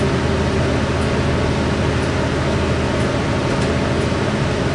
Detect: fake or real real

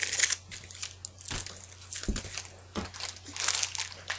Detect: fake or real real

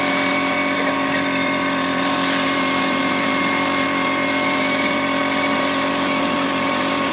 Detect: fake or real fake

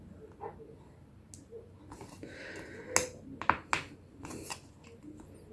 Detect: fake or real real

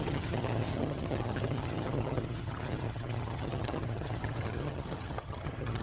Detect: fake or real fake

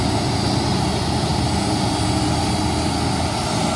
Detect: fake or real real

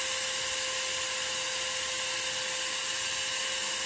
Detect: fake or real real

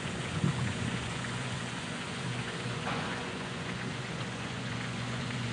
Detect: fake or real fake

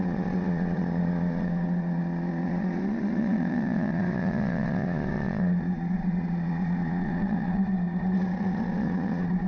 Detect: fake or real fake